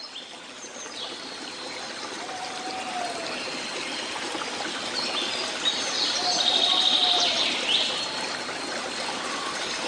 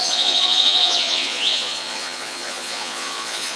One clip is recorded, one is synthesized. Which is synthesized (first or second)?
second